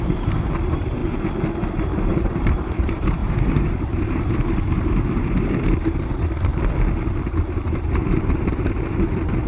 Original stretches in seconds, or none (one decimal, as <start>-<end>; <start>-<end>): 1.0-1.7; 6.5-7.3